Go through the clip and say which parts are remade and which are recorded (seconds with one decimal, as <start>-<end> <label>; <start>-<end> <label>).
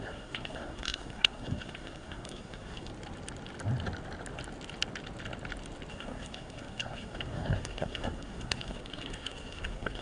0.0-2.9 remade; 2.9-5.9 recorded; 5.9-10.0 remade